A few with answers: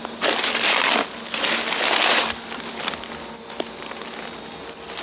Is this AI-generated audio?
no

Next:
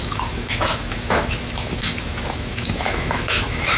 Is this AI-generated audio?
yes